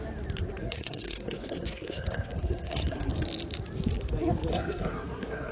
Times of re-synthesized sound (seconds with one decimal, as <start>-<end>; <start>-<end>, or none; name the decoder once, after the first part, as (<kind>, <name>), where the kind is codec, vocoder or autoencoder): 0.6-3.1 (codec, SNAC); 4.5-5.5